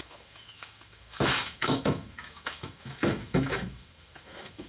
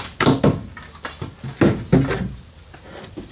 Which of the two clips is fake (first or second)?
first